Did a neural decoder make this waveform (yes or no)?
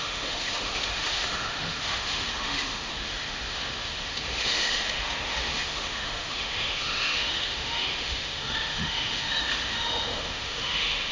yes